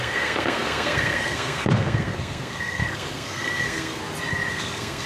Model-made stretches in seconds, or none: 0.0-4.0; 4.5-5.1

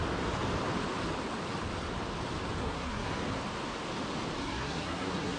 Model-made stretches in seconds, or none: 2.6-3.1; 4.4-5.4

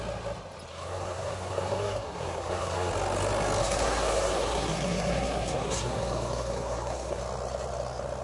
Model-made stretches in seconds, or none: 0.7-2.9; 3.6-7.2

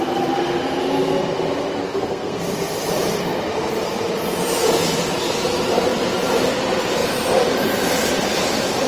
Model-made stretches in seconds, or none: 1.8-2.4